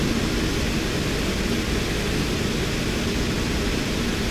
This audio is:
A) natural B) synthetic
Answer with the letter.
A